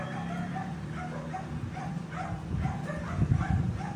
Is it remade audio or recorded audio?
recorded